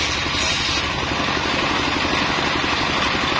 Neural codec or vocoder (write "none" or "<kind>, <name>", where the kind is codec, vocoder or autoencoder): none